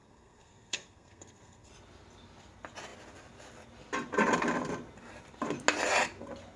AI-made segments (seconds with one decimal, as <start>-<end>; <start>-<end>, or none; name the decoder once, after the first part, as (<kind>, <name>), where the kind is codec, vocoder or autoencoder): 0.0-1.7 (codec, SNAC)